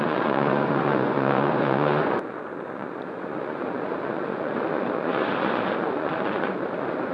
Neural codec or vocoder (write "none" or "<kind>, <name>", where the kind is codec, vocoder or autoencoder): vocoder, Vocos